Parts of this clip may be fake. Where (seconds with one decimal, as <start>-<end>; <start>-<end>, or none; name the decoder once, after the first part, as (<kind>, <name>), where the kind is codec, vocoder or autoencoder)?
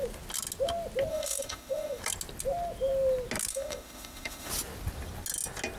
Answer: 1.1-2.0 (autoencoder, DAC-VAE); 3.5-4.5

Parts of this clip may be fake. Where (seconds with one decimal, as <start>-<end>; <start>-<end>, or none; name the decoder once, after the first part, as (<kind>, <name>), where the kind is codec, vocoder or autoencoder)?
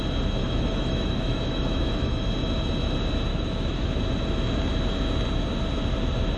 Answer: 0.4-2.3 (autoencoder, DAC-VAE); 3.3-4.0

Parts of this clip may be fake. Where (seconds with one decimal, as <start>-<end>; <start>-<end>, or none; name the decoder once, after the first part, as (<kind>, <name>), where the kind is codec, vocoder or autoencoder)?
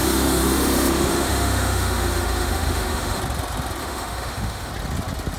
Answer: 0.0-3.2 (autoencoder, DAC-VAE); 3.8-4.7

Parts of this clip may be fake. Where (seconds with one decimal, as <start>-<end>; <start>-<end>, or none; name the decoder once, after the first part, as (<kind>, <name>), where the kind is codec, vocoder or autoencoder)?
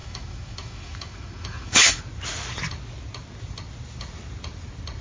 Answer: 0.0-2.0 (autoencoder, DAC-VAE)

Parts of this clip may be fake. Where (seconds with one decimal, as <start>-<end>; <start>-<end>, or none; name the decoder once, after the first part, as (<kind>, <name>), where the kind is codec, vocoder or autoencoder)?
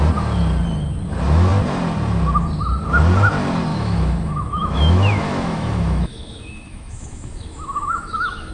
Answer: 3.7-8.5 (autoencoder, DAC-VAE)